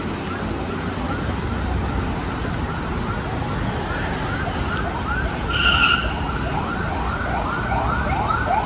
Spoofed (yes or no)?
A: no